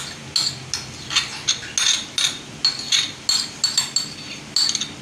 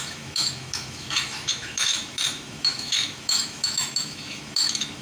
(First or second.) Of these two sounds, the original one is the first